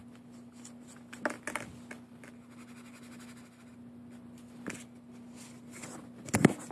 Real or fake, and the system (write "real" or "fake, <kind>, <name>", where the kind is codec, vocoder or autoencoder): real